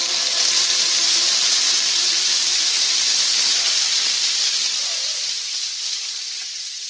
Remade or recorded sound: remade